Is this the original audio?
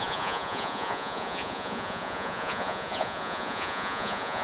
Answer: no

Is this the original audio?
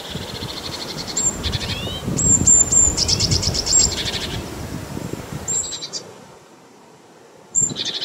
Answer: no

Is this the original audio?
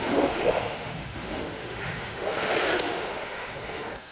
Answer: no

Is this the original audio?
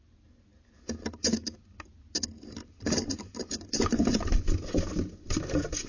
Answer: yes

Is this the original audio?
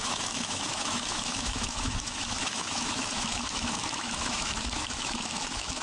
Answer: no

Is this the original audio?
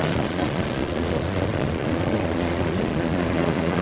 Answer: no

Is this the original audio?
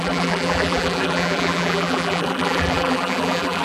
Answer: no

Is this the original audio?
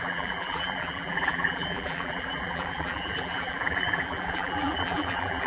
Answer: no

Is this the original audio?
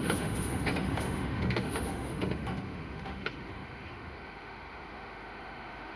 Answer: no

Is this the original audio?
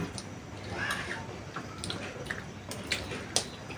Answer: yes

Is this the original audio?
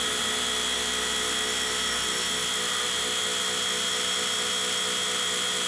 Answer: yes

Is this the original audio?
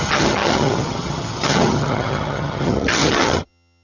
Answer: no